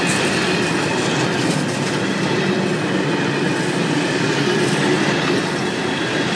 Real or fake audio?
real